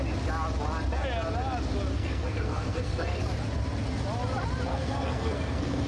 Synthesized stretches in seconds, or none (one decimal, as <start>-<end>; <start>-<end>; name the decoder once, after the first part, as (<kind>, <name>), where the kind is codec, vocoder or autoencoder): 1.9-3.2 (codec, SNAC); 4.7-5.9